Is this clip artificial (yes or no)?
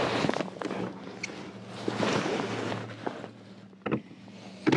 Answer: no